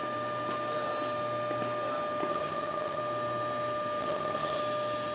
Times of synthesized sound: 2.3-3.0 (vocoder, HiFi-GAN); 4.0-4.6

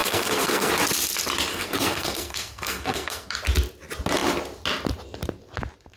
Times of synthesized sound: 0.0-0.7 (codec, SNAC); 1.5-3.4

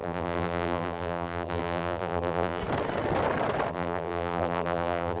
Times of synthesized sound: 0.0-2.6 (vocoder, BigVGAN v2); 3.7-5.2

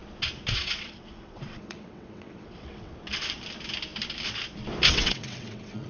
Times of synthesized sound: 0.5-2.9 (vocoder, WaveNeXt); 4.9-5.9

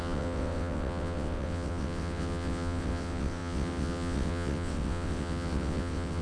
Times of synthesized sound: 0.0-6.2 (vocoder, WaveNeXt)

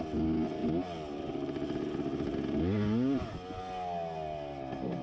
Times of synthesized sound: none

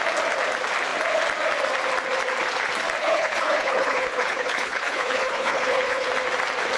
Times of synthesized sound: 3.0-6.1 (codec, HILCodec)

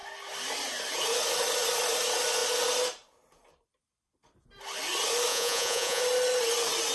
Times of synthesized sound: 5.3-6.0 (vocoder, Vocos)